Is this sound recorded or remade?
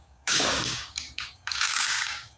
remade